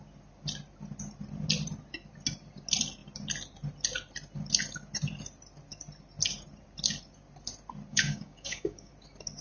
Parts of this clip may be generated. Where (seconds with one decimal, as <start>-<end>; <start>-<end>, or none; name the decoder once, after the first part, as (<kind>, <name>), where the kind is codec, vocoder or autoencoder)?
7.9-8.9 (codec, DAC)